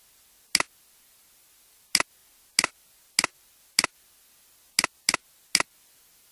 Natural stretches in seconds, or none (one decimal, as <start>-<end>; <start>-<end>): 0.0-6.3